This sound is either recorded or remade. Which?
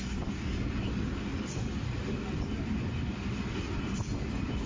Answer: recorded